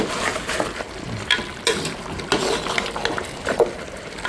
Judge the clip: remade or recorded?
recorded